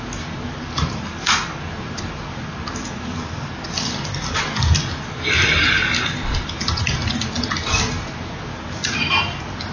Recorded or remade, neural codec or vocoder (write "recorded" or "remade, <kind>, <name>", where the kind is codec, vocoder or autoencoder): recorded